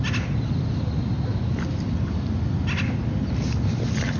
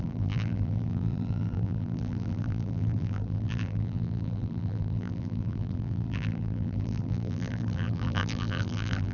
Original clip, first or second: first